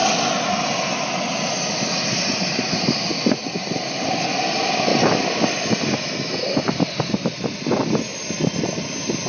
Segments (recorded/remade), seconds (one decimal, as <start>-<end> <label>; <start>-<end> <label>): 0.0-9.3 recorded